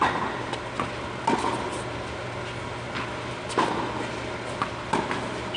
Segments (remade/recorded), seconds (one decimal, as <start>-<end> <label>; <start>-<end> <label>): 0.0-5.6 recorded